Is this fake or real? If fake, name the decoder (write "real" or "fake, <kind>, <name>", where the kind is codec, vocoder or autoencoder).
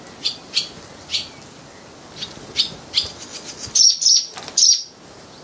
real